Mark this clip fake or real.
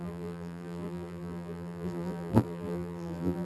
fake